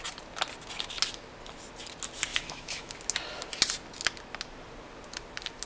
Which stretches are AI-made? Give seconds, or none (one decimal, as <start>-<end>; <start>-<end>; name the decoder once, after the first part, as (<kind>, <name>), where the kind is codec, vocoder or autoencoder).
2.3-2.9 (autoencoder, DAC-VAE)